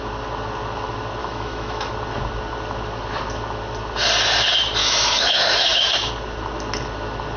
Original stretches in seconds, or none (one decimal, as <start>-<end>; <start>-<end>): 0.0-1.2; 1.9-4.8; 6.1-7.4